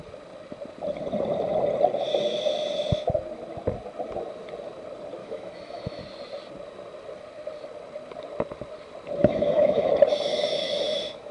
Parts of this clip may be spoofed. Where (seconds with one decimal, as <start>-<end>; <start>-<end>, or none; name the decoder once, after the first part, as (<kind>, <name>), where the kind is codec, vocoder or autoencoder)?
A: 5.2-6.0 (autoencoder, DAC-VAE); 9.2-9.9; 10.3-11.3